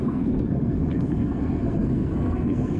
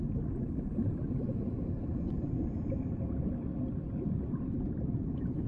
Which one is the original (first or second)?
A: second